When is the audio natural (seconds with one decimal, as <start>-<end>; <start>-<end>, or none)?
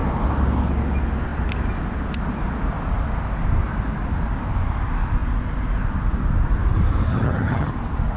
0.0-7.1; 7.7-8.2